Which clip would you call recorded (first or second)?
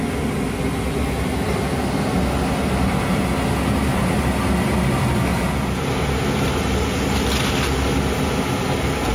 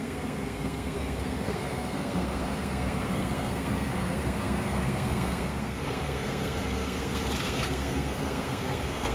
first